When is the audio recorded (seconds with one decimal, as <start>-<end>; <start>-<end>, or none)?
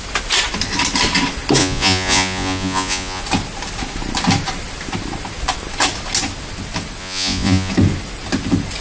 0.0-1.6; 3.2-7.0; 7.7-8.8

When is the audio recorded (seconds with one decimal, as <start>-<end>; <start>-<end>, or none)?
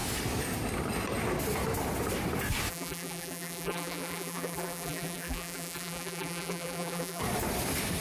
0.0-2.7; 7.2-8.0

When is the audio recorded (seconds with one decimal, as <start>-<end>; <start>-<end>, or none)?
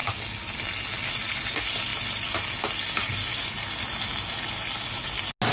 0.0-5.5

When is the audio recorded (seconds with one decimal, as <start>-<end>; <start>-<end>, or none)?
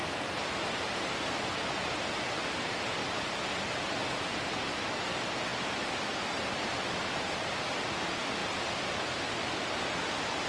0.0-10.5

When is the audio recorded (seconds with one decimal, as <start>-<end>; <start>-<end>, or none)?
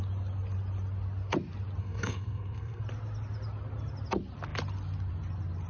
0.0-1.8; 2.8-5.7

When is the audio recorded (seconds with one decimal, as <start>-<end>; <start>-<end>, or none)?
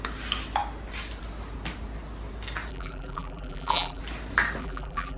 0.0-2.7; 4.0-4.6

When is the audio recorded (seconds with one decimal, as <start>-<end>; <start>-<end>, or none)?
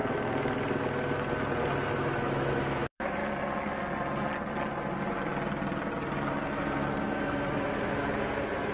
0.0-2.0; 3.2-7.1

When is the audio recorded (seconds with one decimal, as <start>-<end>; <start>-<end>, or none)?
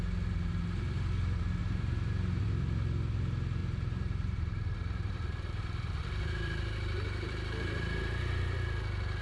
0.0-1.6; 2.4-3.6; 8.2-9.2